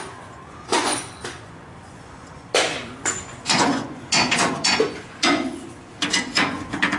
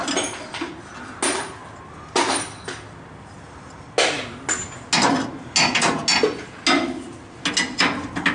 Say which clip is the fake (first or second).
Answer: first